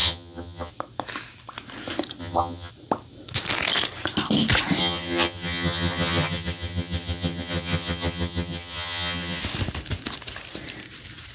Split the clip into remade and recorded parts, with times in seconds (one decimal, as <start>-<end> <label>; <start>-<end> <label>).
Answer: 0.0-0.7 remade; 0.7-2.2 recorded; 2.2-2.7 remade; 2.7-4.8 recorded; 4.8-9.4 remade; 9.4-11.3 recorded